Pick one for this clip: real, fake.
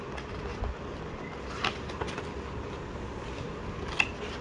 real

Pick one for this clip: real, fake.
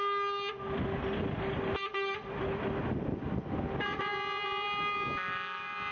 real